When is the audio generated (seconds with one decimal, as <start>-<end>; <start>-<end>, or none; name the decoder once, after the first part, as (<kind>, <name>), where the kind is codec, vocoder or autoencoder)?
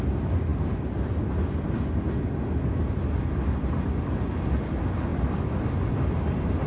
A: none